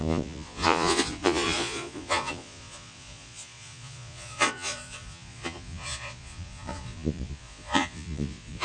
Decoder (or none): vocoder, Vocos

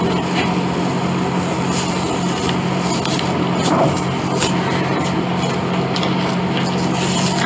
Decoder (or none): none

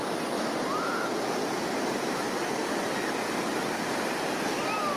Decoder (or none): none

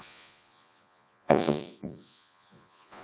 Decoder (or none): vocoder, Vocos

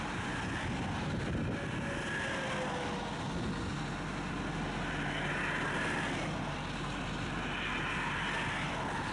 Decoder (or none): none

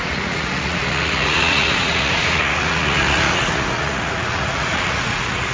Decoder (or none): vocoder, Vocos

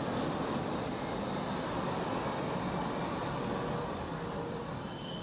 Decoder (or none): none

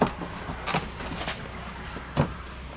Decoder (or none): none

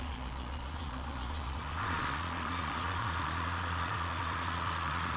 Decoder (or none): vocoder, Vocos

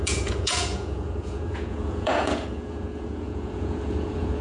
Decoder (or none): vocoder, Vocos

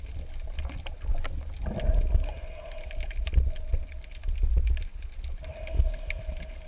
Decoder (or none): none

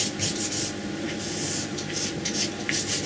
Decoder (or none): none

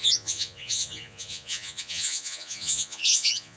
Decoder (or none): vocoder, Vocos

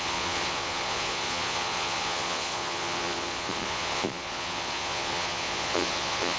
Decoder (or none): vocoder, Vocos